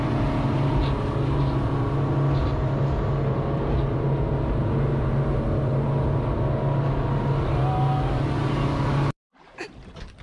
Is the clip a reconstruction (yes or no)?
no